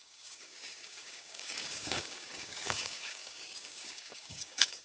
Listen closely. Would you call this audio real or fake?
fake